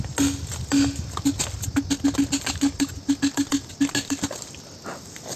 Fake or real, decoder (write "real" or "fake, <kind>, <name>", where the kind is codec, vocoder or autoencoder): real